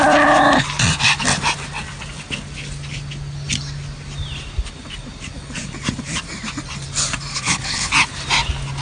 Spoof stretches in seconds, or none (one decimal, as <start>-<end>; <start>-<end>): 7.3-7.9